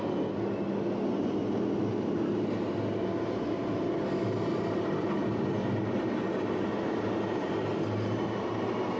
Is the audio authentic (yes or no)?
yes